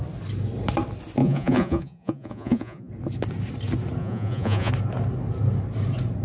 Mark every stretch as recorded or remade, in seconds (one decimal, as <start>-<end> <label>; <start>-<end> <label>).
0.0-1.2 recorded; 1.2-2.9 remade; 2.9-4.0 recorded; 4.0-4.7 remade; 4.7-6.2 recorded